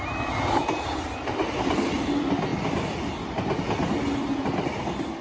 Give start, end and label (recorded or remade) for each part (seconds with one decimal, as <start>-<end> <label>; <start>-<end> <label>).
0.0-5.2 recorded